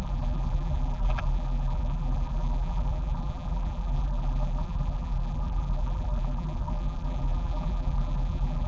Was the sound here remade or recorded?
remade